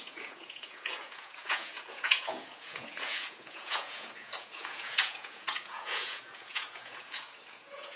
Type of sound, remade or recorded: remade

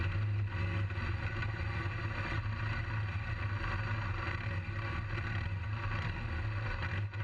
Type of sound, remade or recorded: recorded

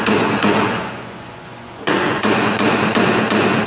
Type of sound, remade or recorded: remade